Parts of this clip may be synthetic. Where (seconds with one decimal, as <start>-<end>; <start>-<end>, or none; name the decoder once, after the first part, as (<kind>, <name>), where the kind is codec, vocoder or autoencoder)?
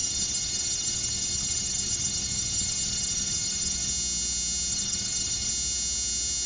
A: 0.0-3.9 (vocoder, HiFi-GAN); 4.7-5.5